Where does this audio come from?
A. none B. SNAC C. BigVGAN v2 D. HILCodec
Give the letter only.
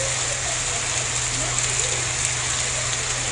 A